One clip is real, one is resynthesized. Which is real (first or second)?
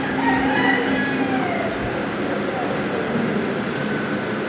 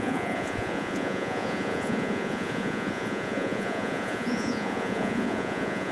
first